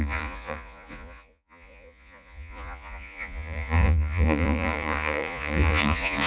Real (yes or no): no